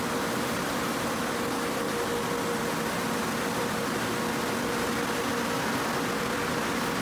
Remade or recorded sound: recorded